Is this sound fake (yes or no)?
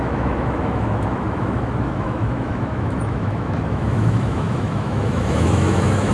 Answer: yes